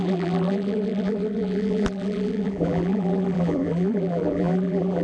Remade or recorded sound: remade